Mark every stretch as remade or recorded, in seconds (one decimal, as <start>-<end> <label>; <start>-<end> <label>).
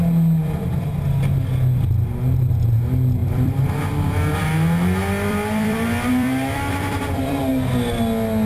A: 0.0-0.4 recorded; 0.4-0.9 remade; 0.9-3.2 recorded; 3.2-3.8 remade; 3.8-5.3 recorded; 5.3-7.4 remade; 7.4-8.5 recorded